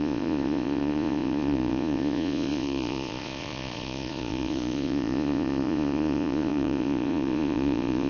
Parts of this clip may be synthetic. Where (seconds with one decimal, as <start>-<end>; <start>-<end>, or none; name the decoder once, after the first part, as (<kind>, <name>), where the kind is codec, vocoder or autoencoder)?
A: 0.0-8.1 (vocoder, Vocos)